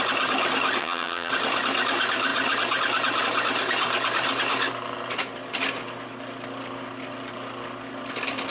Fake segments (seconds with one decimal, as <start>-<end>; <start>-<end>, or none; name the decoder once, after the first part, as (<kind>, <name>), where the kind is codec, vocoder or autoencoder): 0.8-1.3 (vocoder, HiFi-GAN)